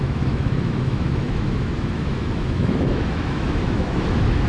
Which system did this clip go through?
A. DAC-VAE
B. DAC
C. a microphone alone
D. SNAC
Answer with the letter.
A